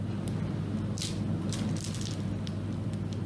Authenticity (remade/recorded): recorded